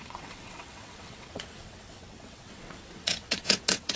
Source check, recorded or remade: remade